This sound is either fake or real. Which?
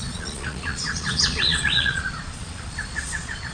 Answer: fake